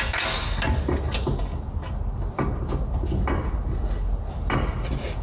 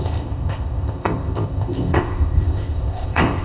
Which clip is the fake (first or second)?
second